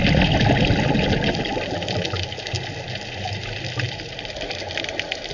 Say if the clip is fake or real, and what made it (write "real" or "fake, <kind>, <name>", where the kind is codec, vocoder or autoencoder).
real